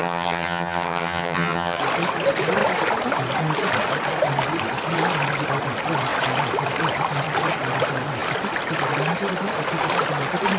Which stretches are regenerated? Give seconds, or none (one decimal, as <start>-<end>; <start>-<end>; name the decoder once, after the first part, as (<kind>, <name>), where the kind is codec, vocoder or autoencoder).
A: 0.0-1.8 (vocoder, HiFi-GAN)